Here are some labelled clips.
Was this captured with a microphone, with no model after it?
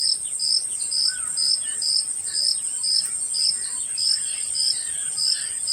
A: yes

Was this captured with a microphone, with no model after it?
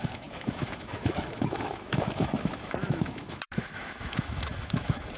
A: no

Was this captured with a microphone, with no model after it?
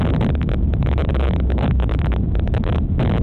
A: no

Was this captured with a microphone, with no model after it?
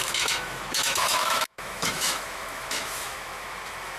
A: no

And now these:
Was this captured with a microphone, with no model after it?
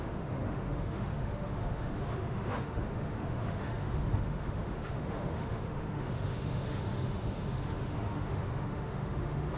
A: no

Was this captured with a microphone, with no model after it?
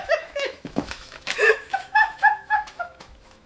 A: no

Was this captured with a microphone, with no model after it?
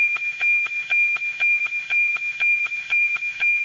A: no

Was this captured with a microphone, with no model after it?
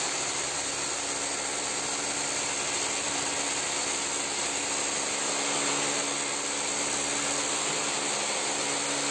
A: yes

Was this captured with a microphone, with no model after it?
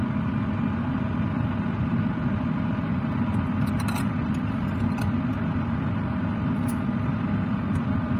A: yes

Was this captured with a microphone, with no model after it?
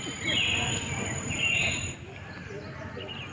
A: yes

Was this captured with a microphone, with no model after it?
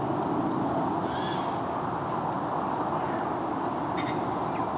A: yes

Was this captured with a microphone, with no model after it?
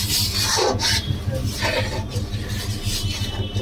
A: yes